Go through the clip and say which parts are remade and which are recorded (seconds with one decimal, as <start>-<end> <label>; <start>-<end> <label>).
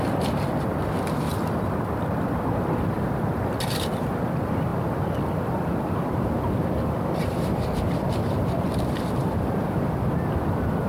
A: 0.0-10.9 remade